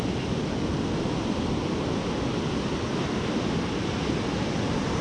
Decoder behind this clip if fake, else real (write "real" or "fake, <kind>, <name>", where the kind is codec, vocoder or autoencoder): real